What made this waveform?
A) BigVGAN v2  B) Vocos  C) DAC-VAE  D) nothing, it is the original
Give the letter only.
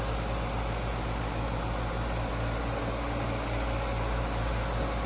D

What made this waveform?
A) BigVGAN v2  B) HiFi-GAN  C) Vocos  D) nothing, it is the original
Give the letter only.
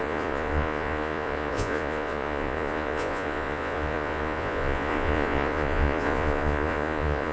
C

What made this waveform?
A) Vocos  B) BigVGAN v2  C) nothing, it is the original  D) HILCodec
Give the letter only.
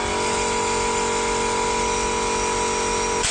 C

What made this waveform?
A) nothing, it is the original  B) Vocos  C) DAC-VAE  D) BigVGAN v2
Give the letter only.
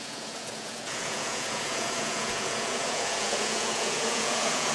B